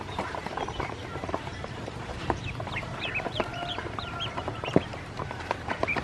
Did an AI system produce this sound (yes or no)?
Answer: yes